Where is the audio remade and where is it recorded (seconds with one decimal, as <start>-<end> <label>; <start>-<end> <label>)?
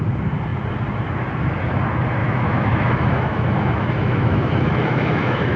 0.0-2.2 recorded; 2.2-5.6 remade